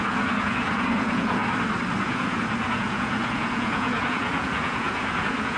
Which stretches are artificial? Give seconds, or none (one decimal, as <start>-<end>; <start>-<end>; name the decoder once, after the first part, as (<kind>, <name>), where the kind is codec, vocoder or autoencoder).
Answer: 0.0-1.4 (vocoder, Vocos); 2.0-5.6